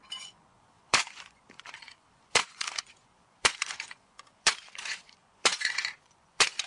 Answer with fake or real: fake